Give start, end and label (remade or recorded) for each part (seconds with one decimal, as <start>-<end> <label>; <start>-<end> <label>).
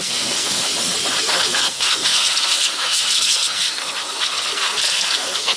0.0-0.7 remade; 0.7-1.2 recorded; 1.2-5.6 remade